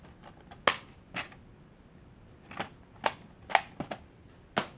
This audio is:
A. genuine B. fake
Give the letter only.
A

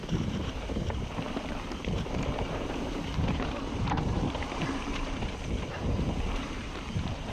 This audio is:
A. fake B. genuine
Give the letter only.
A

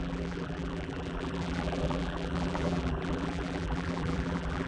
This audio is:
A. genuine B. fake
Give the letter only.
B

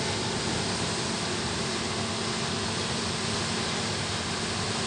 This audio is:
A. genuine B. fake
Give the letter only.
A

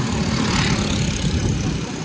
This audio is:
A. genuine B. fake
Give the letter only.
A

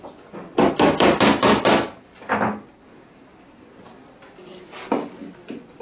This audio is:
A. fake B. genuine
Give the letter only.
B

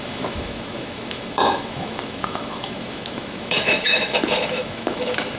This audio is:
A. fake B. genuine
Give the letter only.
A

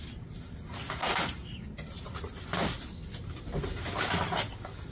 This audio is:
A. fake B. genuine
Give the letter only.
B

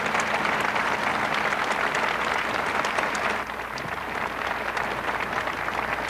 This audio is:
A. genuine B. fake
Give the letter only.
A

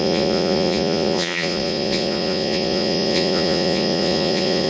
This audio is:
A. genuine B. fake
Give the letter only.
B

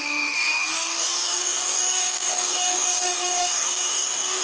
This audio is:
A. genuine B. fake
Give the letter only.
B